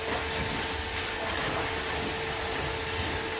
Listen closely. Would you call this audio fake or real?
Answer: real